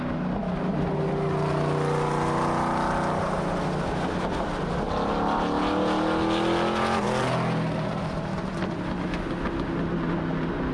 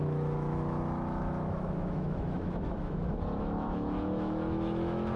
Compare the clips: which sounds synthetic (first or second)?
second